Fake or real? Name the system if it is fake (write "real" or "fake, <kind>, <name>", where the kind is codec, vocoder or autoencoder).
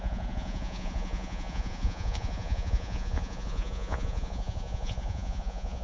fake, vocoder, Vocos